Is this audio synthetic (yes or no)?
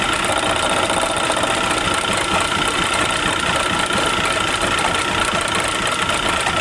no